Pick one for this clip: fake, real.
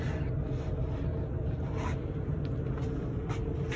real